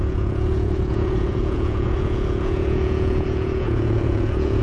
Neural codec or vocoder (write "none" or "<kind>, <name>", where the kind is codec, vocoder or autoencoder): vocoder, Vocos